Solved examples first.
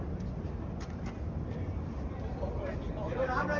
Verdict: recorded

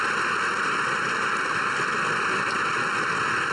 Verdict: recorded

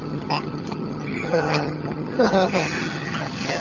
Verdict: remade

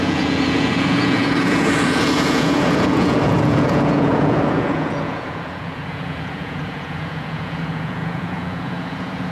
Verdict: remade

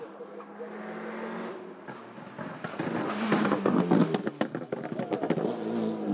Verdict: recorded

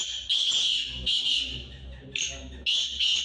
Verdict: recorded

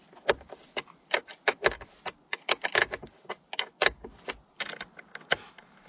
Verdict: recorded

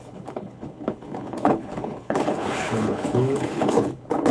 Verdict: remade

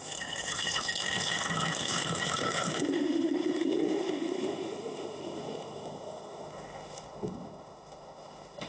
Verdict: remade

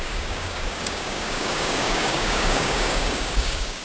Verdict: remade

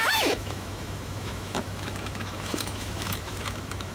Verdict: remade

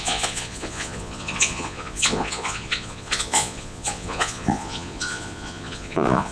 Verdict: remade